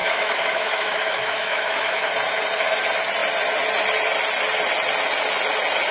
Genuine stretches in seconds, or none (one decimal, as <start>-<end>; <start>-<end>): 2.1-5.9